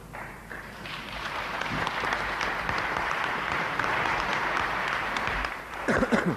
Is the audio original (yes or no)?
no